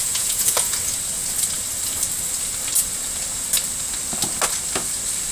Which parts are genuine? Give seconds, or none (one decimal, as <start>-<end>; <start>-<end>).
0.8-5.3